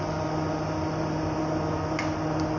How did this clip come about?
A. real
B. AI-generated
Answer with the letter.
A